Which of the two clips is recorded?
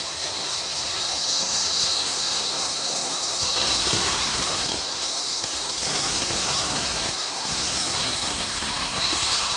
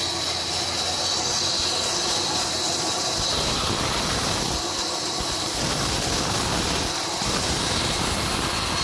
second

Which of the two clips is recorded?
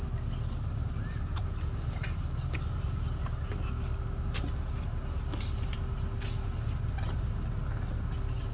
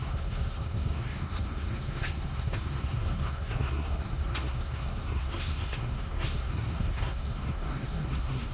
first